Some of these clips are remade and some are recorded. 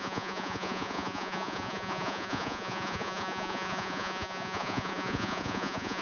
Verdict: remade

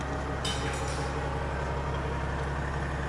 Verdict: recorded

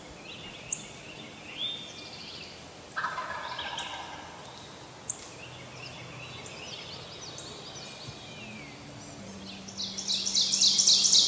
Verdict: recorded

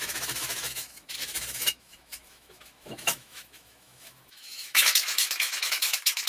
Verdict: remade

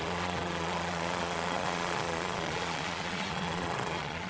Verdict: remade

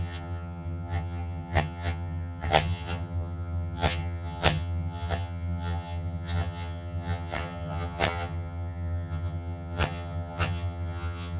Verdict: remade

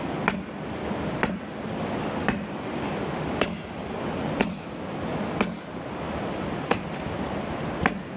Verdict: recorded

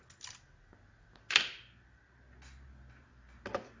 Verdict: recorded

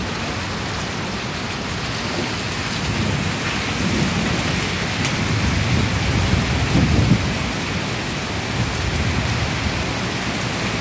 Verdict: recorded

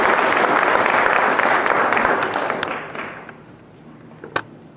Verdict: recorded